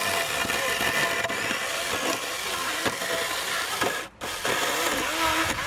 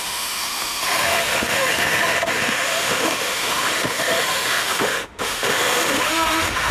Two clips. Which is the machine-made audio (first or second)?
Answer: second